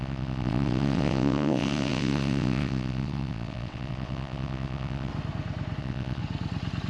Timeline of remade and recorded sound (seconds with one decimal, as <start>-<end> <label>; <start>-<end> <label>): 0.0-5.1 remade; 5.1-5.8 recorded; 5.8-6.2 remade; 6.2-6.9 recorded